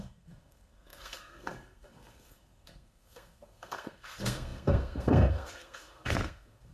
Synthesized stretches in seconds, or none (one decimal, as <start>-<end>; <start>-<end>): 0.0-6.7